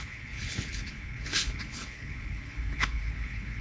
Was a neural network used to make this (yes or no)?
yes